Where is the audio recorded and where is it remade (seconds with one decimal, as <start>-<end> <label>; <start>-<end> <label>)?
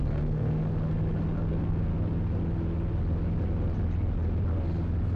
0.0-0.7 remade; 0.7-1.5 recorded; 1.5-1.9 remade; 1.9-5.2 recorded